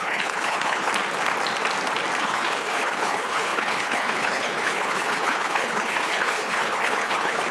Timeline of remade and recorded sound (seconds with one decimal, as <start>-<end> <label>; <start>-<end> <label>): 0.0-0.9 remade; 0.9-2.2 recorded; 2.2-7.5 remade